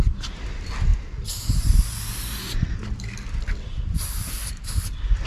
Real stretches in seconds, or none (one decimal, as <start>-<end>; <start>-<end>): 0.0-5.3